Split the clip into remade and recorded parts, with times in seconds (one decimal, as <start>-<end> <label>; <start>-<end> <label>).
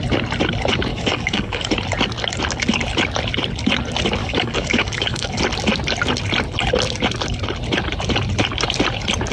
0.0-0.9 recorded; 0.9-1.6 remade; 1.6-4.2 recorded; 4.2-5.4 remade; 5.4-9.3 recorded